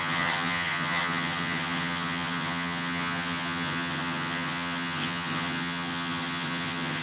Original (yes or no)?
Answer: no